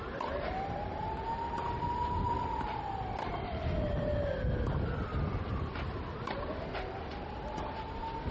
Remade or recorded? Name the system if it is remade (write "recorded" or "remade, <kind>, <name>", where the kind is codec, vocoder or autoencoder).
recorded